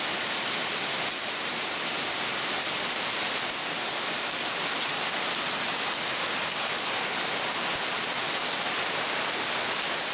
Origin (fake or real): real